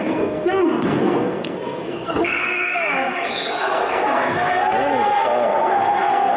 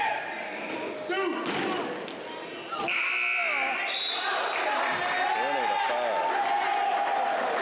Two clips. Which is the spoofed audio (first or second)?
first